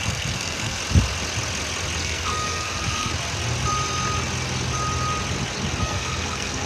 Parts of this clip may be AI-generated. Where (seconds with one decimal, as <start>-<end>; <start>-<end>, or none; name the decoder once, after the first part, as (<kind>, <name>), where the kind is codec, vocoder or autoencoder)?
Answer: 0.0-0.8 (codec, SNAC); 2.0-3.1; 5.8-6.7

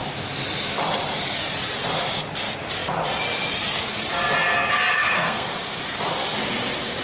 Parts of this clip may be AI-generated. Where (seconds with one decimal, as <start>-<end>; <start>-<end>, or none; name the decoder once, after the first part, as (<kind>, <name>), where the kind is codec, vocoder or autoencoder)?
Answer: 5.0-5.5 (codec, SNAC)

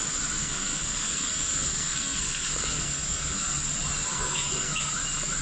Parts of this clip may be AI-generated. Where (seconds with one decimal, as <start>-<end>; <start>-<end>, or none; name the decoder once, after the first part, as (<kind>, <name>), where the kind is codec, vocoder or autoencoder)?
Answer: 0.4-3.6 (codec, SNAC); 4.1-4.9

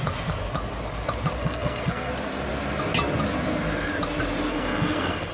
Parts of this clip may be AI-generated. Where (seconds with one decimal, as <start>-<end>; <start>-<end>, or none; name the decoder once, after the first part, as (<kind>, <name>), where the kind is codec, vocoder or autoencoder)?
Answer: 1.4-2.1 (codec, SNAC); 4.5-5.3

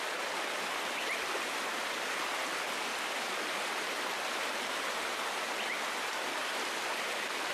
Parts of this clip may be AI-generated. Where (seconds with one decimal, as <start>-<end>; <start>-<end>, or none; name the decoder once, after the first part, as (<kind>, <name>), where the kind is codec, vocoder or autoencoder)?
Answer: none